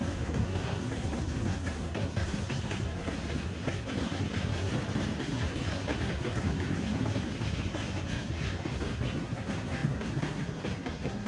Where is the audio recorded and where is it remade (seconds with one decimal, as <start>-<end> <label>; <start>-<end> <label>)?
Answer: 0.0-4.7 remade; 4.7-5.2 recorded; 5.2-11.3 remade